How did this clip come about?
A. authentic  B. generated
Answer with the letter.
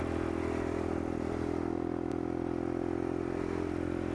A